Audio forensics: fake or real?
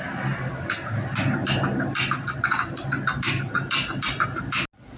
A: real